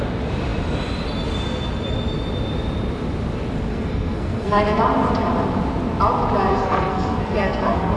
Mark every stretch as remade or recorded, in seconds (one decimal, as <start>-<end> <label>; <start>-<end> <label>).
0.0-3.7 recorded; 3.7-4.8 remade; 4.8-6.5 recorded; 6.5-8.0 remade